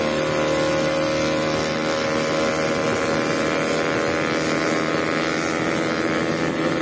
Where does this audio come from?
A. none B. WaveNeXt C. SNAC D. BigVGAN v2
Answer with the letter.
A